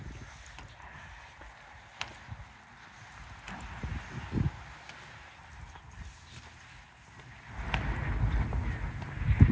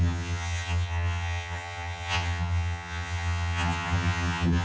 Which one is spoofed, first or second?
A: second